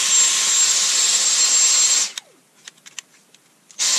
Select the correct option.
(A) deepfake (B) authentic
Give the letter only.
B